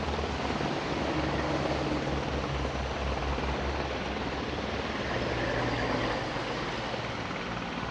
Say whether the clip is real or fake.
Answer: real